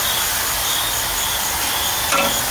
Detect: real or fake real